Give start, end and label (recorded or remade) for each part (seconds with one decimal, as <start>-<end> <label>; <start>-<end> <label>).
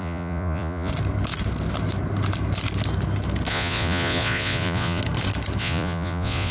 0.0-0.9 remade; 0.9-3.5 recorded; 3.5-5.0 remade; 5.0-5.6 recorded; 5.6-6.5 remade